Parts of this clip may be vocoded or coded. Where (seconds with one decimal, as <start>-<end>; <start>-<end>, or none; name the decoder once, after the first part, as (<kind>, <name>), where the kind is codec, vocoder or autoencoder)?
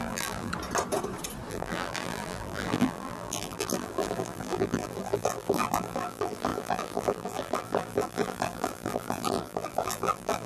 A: 0.0-0.5 (vocoder, BigVGAN v2); 1.5-10.5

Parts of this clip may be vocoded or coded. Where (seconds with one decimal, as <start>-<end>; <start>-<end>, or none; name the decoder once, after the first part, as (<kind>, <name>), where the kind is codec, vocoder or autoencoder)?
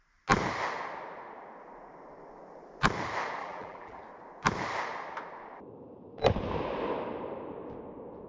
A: 3.4-4.0 (vocoder, BigVGAN v2)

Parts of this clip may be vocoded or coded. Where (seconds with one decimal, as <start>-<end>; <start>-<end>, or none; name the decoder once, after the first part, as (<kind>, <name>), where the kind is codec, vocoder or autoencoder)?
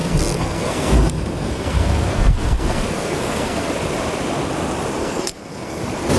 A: 0.0-3.7 (codec, SNAC); 5.0-5.8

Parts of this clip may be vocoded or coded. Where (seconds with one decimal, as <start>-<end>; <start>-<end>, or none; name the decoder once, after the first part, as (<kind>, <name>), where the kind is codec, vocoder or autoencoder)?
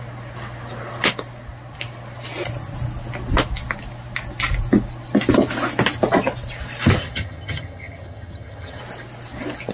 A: 7.0-8.8 (vocoder, HiFi-GAN)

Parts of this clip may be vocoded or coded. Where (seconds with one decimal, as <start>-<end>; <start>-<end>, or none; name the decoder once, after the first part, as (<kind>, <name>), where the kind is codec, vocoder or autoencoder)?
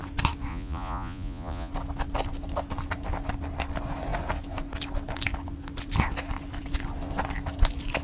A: 0.5-1.7 (vocoder, Vocos)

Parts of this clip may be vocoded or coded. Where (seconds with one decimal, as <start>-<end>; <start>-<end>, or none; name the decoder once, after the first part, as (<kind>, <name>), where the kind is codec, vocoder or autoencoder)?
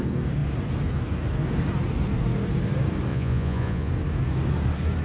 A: 3.1-3.9 (vocoder, Vocos)